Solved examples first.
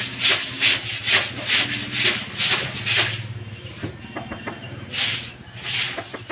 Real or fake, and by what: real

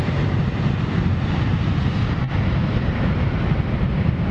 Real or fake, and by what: real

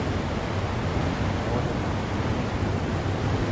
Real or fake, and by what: real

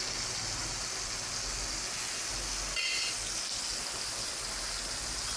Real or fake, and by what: real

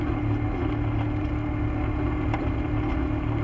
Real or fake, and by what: real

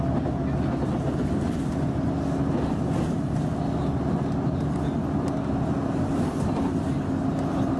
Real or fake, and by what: real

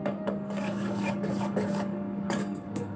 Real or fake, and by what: fake, codec, DAC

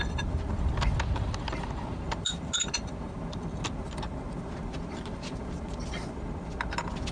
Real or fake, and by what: real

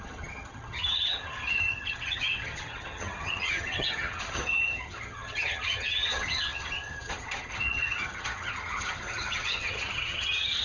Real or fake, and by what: fake, vocoder, HiFi-GAN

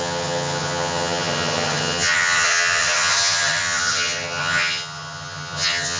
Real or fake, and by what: fake, vocoder, HiFi-GAN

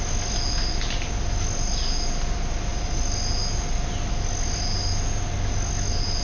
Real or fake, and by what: real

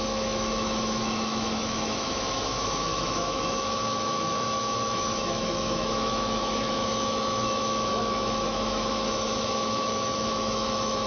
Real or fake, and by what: fake, autoencoder, DAC-VAE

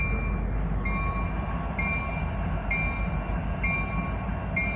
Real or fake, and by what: real